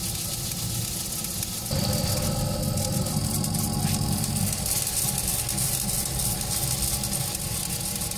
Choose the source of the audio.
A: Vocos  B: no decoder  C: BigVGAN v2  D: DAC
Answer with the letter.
B